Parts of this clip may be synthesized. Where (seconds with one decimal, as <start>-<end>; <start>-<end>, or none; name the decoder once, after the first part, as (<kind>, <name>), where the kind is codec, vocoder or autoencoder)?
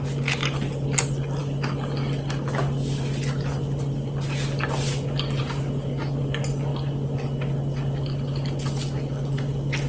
none